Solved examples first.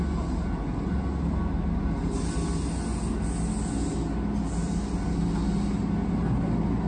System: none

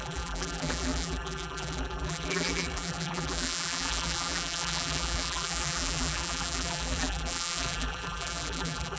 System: vocoder, BigVGAN v2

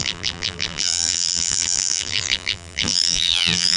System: vocoder, BigVGAN v2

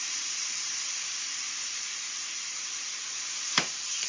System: vocoder, BigVGAN v2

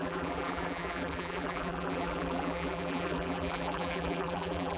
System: vocoder, BigVGAN v2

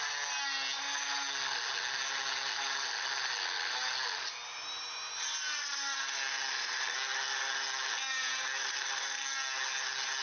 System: none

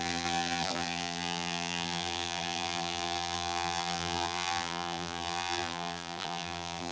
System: vocoder, BigVGAN v2